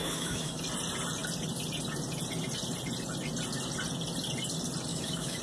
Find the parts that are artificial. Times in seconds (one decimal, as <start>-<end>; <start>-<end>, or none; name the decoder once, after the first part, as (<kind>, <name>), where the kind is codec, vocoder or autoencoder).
0.0-0.6 (autoencoder, DAC-VAE); 4.9-5.4

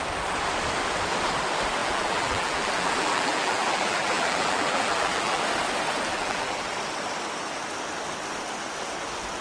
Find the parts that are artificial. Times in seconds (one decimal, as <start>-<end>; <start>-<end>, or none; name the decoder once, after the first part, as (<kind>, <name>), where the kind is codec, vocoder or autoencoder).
1.8-5.4 (vocoder, BigVGAN v2); 6.1-6.6

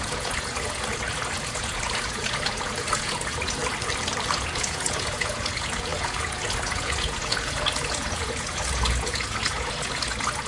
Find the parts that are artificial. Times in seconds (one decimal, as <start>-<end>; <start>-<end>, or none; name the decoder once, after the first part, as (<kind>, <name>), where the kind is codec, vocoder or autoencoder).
0.0-3.6 (vocoder, Vocos); 4.3-10.5

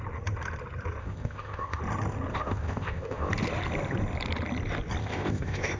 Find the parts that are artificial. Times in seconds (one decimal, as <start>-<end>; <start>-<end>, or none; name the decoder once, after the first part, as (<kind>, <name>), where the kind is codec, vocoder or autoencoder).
1.0-1.8 (codec, ZipCodec); 2.3-3.3; 5.0-5.8

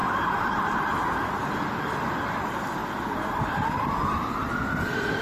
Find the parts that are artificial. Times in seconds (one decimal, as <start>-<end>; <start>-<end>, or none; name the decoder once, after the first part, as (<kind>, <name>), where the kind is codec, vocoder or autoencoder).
0.0-1.0 (vocoder, BigVGAN v2)

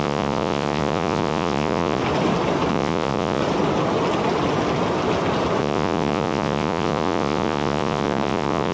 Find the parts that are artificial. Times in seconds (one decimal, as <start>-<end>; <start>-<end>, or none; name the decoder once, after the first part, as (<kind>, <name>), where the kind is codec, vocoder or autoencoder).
0.0-2.0 (vocoder, Vocos); 2.7-3.4; 5.6-8.7

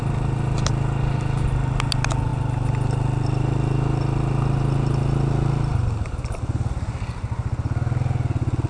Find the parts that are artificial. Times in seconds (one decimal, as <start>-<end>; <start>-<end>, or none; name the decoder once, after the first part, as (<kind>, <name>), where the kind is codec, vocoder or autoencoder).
none

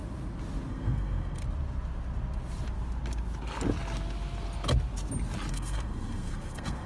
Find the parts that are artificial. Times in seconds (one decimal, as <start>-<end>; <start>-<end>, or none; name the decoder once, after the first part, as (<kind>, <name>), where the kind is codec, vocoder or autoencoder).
0.7-1.4 (codec, SNAC); 5.5-6.9